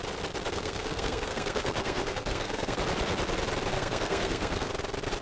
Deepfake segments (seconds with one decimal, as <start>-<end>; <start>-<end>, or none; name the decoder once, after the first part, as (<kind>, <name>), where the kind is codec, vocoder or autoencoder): 0.5-2.8 (codec, SNAC); 3.7-4.7